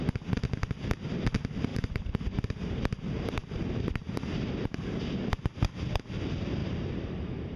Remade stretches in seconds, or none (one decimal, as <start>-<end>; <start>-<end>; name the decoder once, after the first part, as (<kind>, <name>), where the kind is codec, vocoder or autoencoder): 1.7-5.3 (vocoder, BigVGAN v2); 6.6-7.6